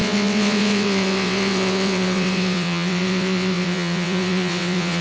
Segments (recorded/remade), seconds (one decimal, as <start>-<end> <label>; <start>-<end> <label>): 0.0-5.0 remade